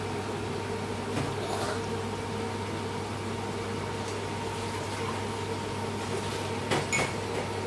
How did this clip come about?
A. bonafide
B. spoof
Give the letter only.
A